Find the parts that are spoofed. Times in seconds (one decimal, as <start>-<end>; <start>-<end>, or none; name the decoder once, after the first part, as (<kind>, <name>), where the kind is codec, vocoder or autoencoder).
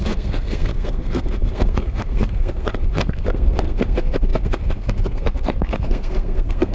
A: 0.0-6.7 (codec, SNAC)